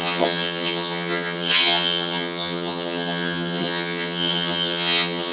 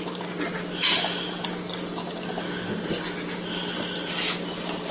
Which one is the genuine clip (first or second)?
second